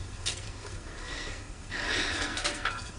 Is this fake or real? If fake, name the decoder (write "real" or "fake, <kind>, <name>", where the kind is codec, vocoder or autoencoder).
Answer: fake, codec, SNAC